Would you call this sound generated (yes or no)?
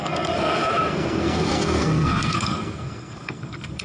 yes